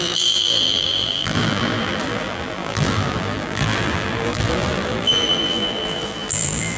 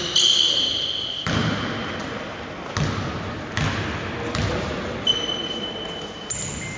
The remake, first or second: first